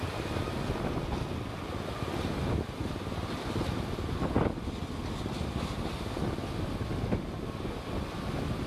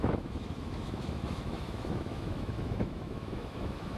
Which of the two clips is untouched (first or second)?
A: first